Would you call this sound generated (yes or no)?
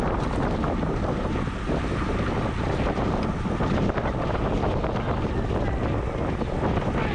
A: no